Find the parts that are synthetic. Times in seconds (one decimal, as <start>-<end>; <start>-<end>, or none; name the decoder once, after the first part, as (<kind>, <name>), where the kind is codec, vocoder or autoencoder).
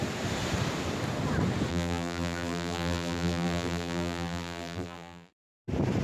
1.7-5.3 (vocoder, BigVGAN v2)